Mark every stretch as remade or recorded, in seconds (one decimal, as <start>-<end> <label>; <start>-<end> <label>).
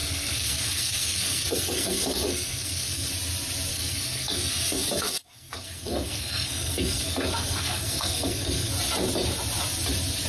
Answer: 0.0-3.1 remade; 3.1-3.7 recorded; 3.7-8.7 remade; 8.7-10.3 recorded